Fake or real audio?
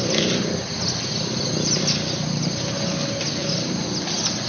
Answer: real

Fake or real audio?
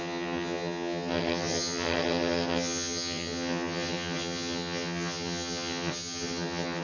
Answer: fake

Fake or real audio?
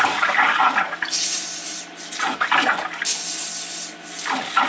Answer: real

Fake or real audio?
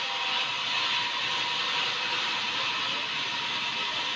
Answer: real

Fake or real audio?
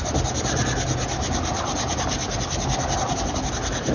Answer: real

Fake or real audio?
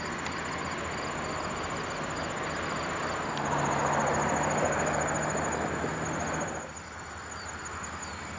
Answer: real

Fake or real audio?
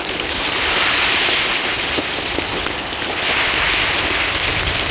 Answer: real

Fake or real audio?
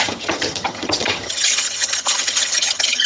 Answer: fake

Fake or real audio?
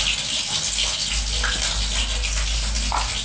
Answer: real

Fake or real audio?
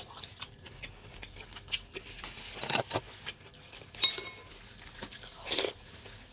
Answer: real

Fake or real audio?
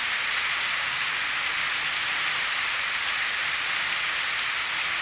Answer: real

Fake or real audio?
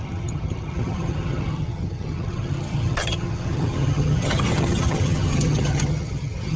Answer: fake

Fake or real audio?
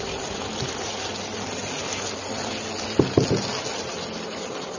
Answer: real